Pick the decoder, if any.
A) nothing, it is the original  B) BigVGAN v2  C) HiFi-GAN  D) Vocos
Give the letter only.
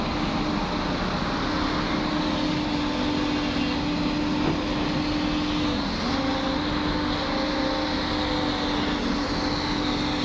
A